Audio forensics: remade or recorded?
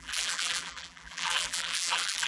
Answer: remade